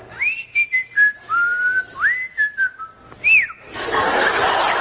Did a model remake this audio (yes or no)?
no